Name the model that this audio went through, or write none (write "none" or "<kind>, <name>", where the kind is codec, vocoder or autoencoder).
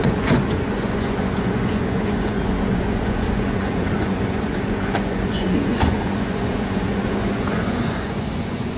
vocoder, Vocos